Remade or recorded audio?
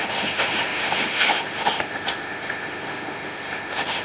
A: remade